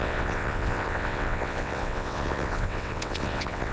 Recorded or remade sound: remade